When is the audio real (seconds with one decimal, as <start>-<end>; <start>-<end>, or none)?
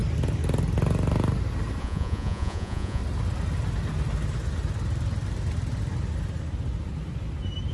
0.0-1.8; 3.0-7.7